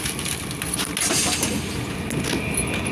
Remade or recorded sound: recorded